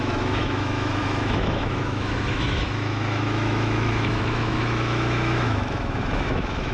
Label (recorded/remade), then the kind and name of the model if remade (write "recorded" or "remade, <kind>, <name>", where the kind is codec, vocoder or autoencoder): remade, autoencoder, DAC-VAE